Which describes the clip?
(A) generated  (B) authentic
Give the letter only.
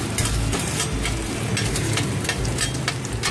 B